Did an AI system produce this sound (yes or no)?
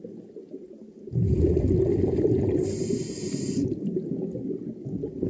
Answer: no